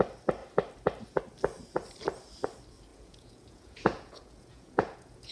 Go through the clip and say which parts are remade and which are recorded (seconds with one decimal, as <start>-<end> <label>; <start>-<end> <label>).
0.0-2.9 recorded; 2.9-5.3 remade